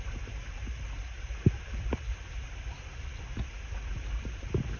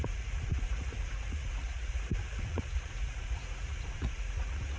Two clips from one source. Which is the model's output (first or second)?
second